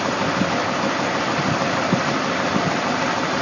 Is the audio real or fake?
fake